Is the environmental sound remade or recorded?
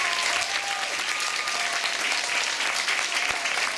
recorded